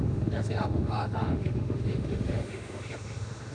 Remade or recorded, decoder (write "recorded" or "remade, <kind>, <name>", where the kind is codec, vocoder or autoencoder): remade, autoencoder, DAC-VAE